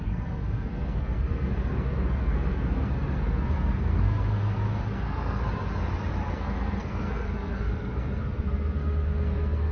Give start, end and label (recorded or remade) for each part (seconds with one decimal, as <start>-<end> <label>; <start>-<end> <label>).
0.0-5.4 remade; 5.4-6.3 recorded; 6.3-9.7 remade